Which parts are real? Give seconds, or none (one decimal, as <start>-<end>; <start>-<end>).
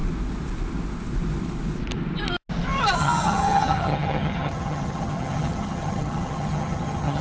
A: 0.0-3.0